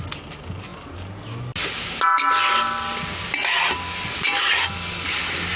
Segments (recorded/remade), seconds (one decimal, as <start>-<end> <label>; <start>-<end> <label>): 0.0-5.6 recorded